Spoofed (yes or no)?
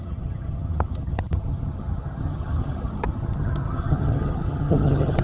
yes